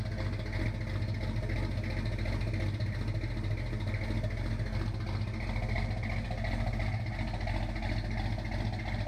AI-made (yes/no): no